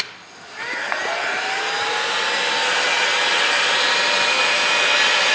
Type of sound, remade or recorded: recorded